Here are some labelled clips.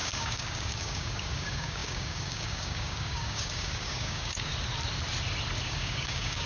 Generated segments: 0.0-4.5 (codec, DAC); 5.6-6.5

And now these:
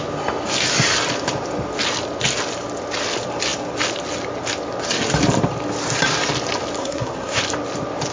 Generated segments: 6.8-7.4 (codec, SNAC)

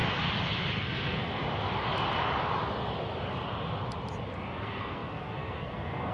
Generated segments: 0.8-1.4 (codec, SNAC); 4.6-6.1

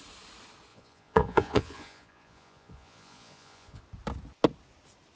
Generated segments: 0.7-3.8 (vocoder, Vocos)

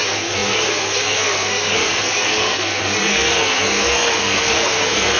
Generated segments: 0.0-5.2 (codec, SNAC)

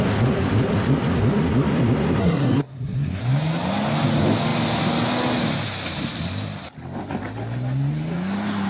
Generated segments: 2.2-3.2 (codec, SNAC)

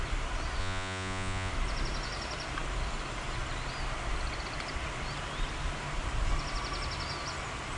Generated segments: 0.6-1.5 (vocoder, Vocos)